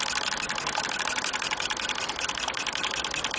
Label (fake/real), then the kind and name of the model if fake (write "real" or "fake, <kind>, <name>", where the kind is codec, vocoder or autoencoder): real